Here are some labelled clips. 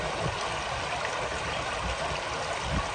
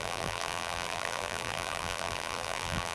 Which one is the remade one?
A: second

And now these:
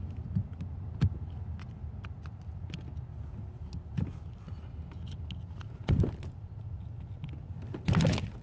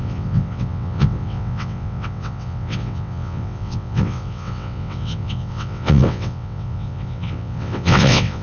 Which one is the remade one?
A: second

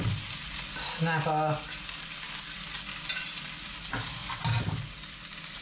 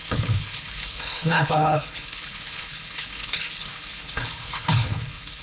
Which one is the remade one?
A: second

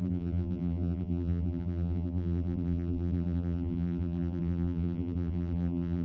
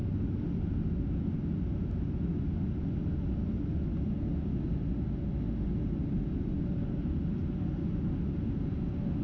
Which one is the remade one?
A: first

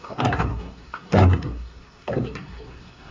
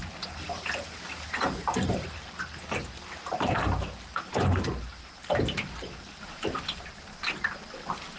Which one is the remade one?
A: first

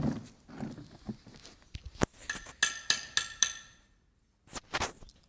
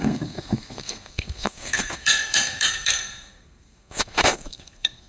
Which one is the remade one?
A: second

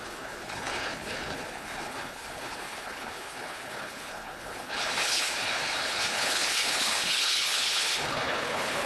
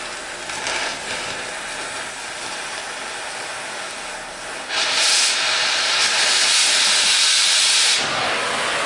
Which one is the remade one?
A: first